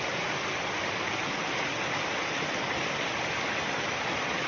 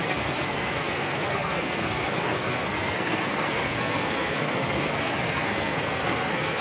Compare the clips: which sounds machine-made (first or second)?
second